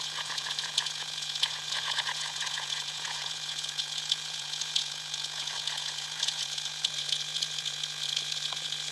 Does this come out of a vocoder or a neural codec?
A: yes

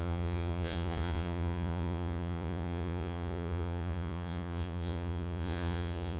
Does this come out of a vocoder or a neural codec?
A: yes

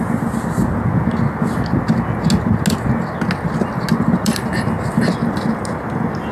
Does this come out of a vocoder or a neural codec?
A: no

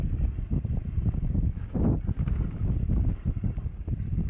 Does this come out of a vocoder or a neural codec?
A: no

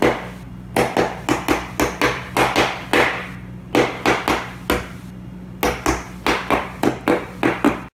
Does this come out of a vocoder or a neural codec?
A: no